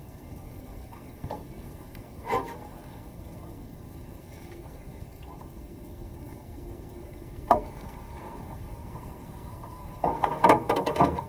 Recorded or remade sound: remade